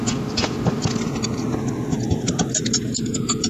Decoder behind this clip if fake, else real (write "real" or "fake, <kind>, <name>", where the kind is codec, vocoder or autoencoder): real